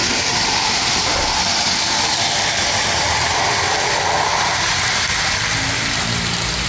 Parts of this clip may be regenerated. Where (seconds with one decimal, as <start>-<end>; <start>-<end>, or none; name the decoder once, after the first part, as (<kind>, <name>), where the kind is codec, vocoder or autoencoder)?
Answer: none